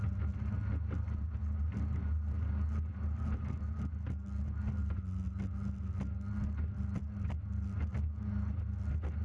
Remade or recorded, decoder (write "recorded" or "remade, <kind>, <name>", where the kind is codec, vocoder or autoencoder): recorded